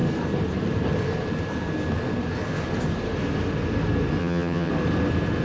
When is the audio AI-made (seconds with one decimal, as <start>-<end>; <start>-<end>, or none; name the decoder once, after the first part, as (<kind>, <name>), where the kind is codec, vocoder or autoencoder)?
4.2-4.7 (vocoder, HiFi-GAN)